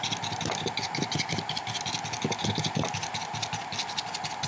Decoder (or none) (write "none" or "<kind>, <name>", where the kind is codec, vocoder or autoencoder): none